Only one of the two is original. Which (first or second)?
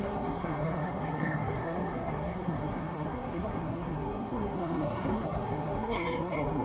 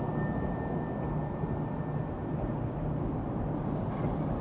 second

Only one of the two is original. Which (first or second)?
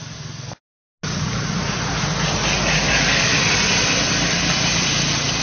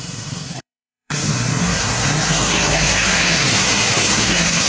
first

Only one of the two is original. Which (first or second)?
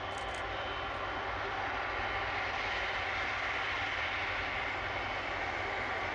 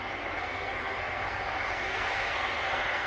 first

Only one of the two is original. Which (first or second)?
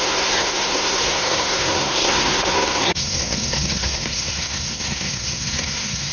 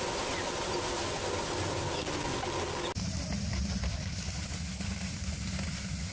second